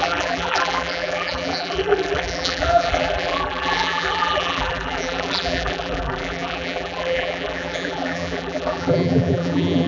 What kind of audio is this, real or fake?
fake